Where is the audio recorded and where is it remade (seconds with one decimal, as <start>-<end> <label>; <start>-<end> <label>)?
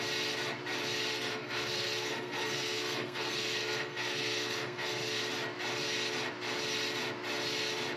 0.0-1.1 recorded; 1.1-5.2 remade; 5.2-8.0 recorded